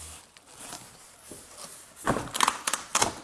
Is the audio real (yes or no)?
yes